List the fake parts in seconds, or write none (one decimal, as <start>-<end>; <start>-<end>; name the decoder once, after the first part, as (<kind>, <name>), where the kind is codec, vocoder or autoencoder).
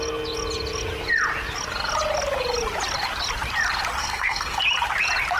4.0-4.6 (codec, SNAC)